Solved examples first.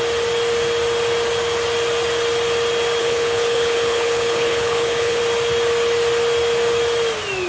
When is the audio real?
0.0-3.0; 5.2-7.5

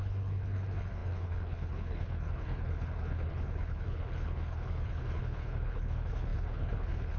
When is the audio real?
none

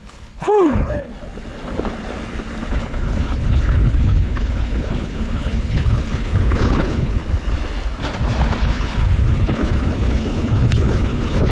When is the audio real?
1.1-2.7; 7.2-8.6

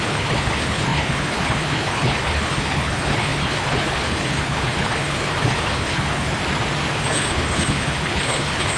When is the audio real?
6.4-6.9

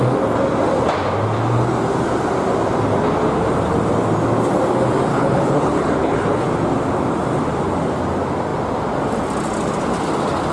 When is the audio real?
0.0-5.1; 6.5-10.5

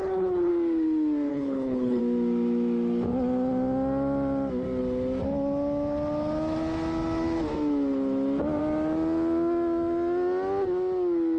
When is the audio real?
0.5-1.3; 2.0-11.4